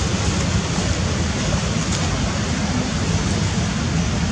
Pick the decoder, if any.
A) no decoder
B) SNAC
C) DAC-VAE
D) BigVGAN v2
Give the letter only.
A